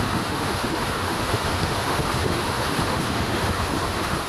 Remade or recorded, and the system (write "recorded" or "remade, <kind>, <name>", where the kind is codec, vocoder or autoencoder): remade, autoencoder, DAC-VAE